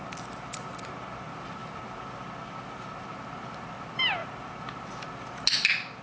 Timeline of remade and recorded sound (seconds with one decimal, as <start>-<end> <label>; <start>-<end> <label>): 0.0-6.0 recorded